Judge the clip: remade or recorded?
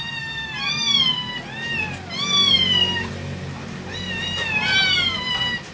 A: recorded